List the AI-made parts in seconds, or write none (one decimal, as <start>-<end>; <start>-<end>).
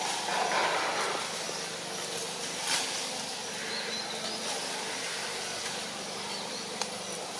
none